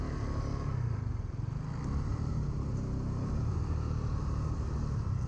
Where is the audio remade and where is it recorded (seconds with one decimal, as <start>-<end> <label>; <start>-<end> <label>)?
0.0-2.1 recorded; 2.1-4.8 remade; 4.8-5.3 recorded